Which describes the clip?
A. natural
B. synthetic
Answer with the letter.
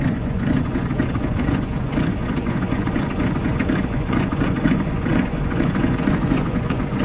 B